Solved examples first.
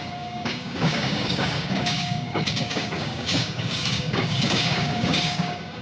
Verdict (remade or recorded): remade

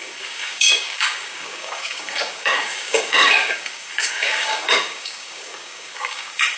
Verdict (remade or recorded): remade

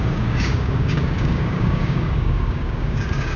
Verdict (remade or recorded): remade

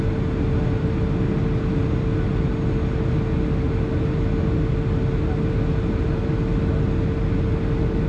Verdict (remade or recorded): recorded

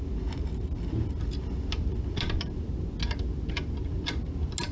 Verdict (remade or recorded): recorded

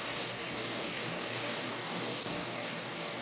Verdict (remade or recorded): remade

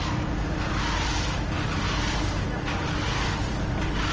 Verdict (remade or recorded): recorded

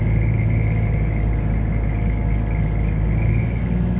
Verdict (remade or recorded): recorded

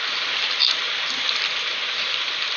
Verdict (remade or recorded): recorded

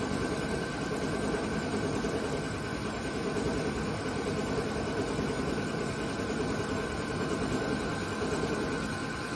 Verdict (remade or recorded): recorded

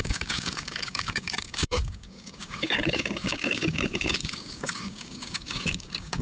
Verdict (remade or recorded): remade